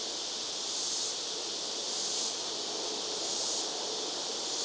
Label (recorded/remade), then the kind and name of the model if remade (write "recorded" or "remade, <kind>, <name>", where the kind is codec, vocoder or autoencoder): recorded